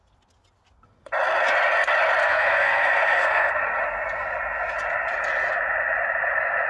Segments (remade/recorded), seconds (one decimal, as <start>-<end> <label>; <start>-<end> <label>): 0.0-2.2 recorded; 2.2-3.5 remade; 3.5-6.7 recorded